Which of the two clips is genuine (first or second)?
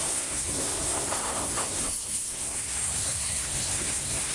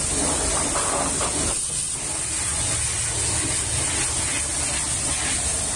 second